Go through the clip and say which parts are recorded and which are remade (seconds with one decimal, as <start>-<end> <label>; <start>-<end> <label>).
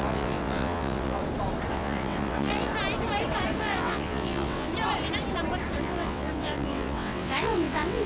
0.0-1.2 remade; 1.2-1.7 recorded; 1.7-2.7 remade; 2.7-3.6 recorded; 3.6-4.7 remade; 4.7-5.8 recorded; 5.8-8.1 remade